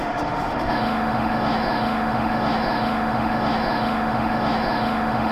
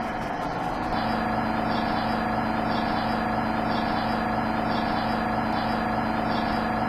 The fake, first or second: first